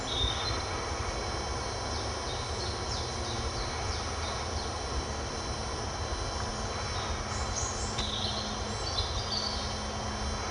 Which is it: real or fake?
real